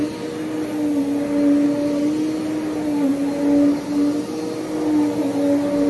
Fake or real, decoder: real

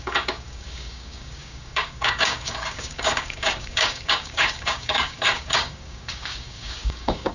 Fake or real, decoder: fake, codec, DAC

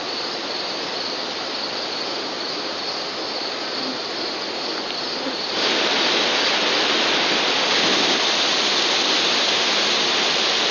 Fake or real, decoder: real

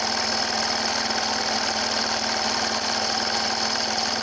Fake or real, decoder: real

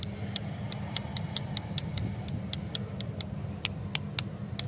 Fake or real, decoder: real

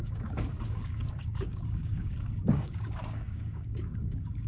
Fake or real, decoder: fake, codec, DAC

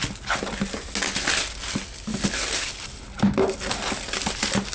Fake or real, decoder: real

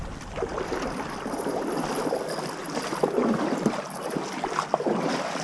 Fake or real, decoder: real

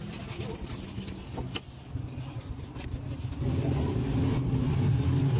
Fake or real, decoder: real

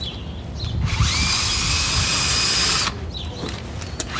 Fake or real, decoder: real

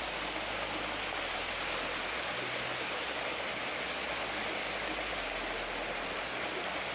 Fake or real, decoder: real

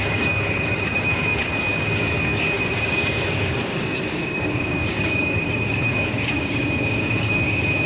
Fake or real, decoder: fake, codec, DAC